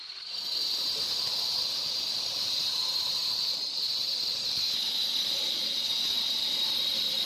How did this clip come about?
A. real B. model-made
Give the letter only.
A